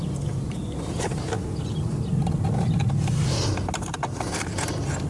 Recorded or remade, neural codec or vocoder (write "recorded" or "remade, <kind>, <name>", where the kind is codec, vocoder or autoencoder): recorded